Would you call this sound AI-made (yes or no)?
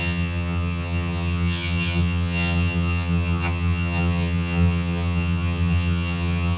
yes